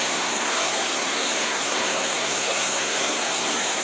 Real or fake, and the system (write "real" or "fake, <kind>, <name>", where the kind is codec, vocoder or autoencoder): fake, codec, SNAC